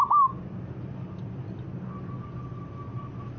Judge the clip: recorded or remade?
recorded